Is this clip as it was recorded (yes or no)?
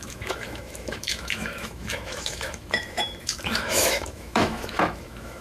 no